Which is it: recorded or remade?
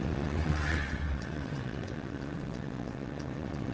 remade